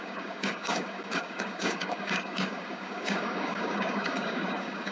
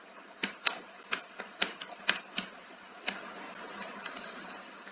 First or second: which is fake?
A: first